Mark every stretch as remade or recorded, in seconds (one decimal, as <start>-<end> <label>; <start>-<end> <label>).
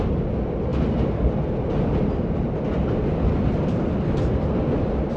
0.0-5.2 recorded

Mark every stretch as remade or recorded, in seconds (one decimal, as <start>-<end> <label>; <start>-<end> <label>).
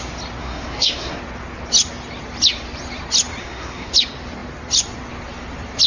0.0-0.4 recorded; 0.4-1.2 remade; 1.2-3.4 recorded; 3.4-3.9 remade; 3.9-5.9 recorded